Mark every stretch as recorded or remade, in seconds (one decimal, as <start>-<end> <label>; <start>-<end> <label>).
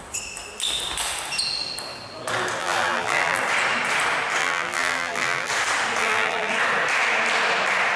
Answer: 0.0-2.6 recorded; 2.6-3.4 remade; 3.4-4.4 recorded; 4.4-5.5 remade; 5.5-6.0 recorded; 6.0-6.5 remade; 6.5-8.0 recorded